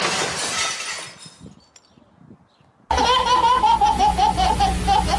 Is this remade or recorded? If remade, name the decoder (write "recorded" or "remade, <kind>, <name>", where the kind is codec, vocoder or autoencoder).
recorded